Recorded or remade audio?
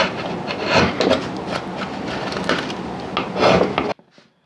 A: recorded